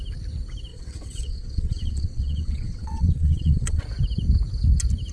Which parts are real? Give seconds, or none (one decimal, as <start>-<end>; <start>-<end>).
0.0-0.7; 3.8-5.1